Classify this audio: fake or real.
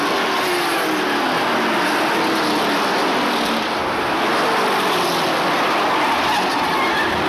real